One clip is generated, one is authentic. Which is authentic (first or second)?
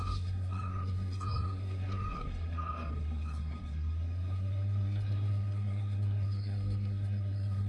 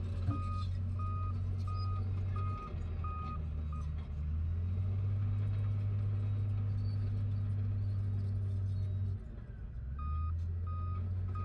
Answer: second